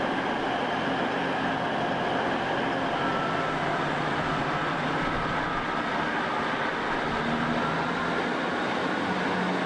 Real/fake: real